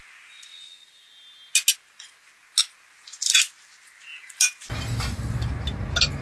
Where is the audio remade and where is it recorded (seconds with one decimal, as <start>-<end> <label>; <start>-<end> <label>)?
0.0-6.2 recorded